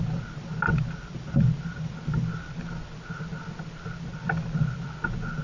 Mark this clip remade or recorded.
recorded